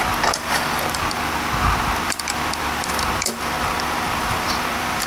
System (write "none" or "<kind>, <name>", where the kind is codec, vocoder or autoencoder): vocoder, BigVGAN v2